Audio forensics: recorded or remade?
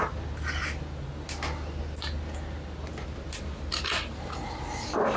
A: recorded